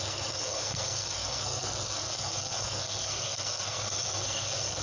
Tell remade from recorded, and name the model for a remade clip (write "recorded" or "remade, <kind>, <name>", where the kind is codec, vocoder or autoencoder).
remade, codec, SNAC